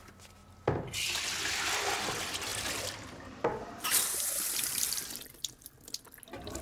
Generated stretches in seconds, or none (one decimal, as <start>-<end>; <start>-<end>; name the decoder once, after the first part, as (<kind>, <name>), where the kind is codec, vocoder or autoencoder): 2.5-6.0 (vocoder, BigVGAN v2)